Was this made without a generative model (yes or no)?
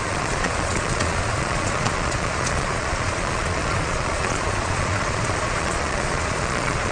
no